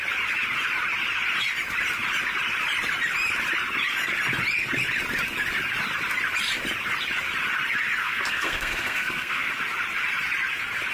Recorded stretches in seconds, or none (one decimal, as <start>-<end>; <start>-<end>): 0.0-8.0; 9.5-10.9